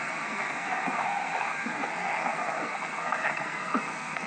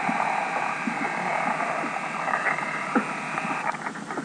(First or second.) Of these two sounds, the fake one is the first